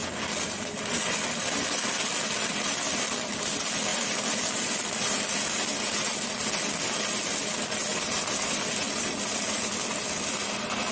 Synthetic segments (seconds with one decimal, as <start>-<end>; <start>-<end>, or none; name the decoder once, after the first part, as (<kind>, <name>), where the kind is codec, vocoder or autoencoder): 3.9-6.0 (vocoder, BigVGAN v2); 7.9-8.7